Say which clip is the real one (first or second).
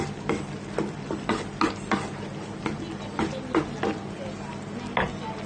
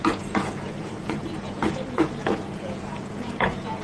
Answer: first